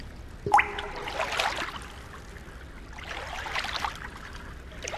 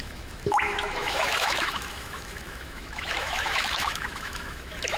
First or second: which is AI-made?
second